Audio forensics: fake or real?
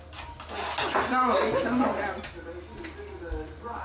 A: real